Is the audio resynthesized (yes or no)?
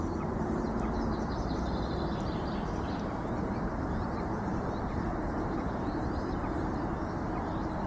yes